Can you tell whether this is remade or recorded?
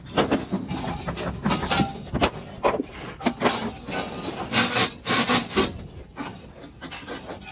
recorded